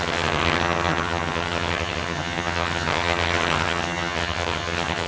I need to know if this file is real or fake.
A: fake